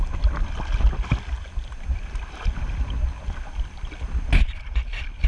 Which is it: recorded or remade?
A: recorded